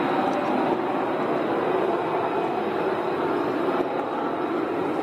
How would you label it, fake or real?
real